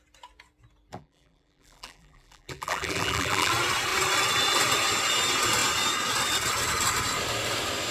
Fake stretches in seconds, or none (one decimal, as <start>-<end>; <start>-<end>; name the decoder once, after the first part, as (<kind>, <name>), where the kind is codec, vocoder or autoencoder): 0.9-3.5 (vocoder, BigVGAN v2)